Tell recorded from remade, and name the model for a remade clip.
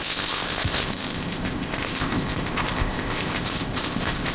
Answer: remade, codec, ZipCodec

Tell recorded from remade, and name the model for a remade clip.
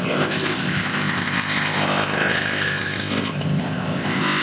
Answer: remade, codec, ZipCodec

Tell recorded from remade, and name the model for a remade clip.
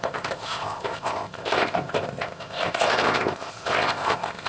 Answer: remade, codec, ZipCodec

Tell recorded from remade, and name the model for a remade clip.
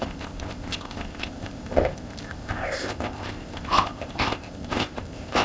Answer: remade, codec, ZipCodec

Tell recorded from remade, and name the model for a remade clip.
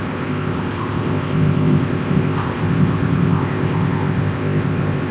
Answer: remade, codec, ZipCodec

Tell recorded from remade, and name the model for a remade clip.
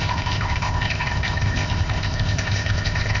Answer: remade, codec, ZipCodec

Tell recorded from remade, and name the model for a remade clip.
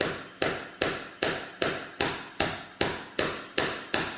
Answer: recorded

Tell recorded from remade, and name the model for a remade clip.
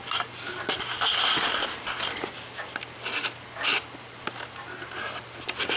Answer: recorded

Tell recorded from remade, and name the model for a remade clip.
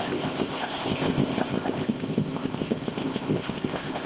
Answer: remade, codec, ZipCodec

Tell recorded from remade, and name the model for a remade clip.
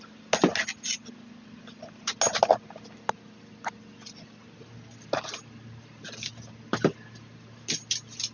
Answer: recorded